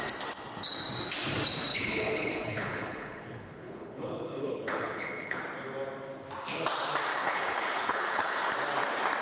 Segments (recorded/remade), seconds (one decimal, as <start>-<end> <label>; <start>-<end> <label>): 0.0-1.7 recorded; 1.7-5.4 remade; 5.4-7.1 recorded; 7.1-8.5 remade; 8.5-9.2 recorded